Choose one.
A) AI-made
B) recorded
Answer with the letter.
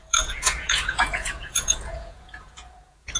A